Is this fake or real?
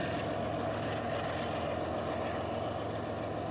real